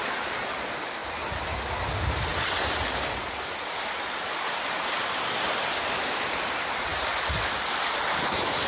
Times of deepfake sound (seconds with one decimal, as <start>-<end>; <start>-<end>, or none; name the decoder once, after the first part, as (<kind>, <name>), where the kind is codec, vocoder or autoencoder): none